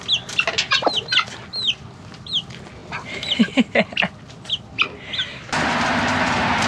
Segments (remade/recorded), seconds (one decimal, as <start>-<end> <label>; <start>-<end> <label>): 0.0-6.7 recorded

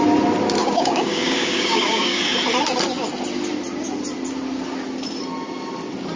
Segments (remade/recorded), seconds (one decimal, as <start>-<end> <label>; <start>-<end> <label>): 0.0-0.6 recorded; 0.6-2.2 remade; 2.2-6.2 recorded

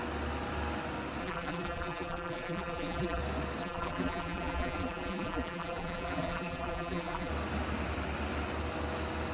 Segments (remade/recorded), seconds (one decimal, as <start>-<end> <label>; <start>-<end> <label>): 0.0-1.2 recorded; 1.2-3.2 remade; 3.2-3.6 recorded; 3.6-7.3 remade; 7.3-9.3 recorded